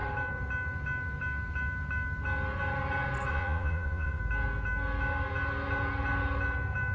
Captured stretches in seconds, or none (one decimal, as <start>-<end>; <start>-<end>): 0.0-3.3; 4.2-6.9